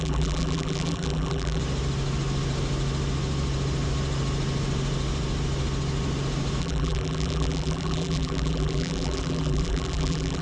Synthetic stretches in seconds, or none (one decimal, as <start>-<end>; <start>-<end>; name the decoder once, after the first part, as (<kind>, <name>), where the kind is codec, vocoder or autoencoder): 0.0-1.6 (vocoder, BigVGAN v2); 6.6-10.4